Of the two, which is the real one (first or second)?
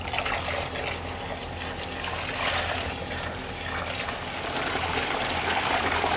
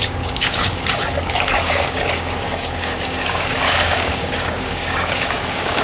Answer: first